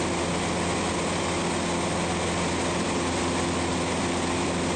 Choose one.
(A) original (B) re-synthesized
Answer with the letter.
A